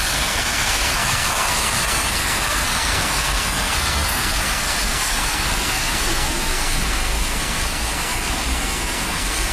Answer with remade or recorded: remade